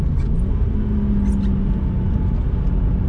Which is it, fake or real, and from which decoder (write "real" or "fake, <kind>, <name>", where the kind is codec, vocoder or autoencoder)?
real